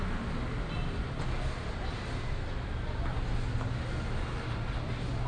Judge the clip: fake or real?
real